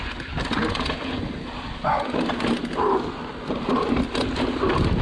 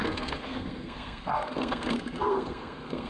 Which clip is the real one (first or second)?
first